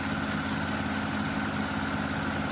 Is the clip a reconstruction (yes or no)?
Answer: no